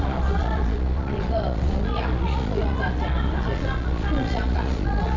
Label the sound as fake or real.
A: fake